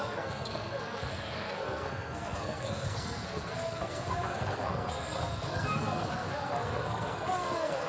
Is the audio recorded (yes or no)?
no